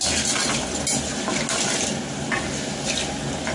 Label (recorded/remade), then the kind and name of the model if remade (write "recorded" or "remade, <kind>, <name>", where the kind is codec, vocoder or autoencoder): recorded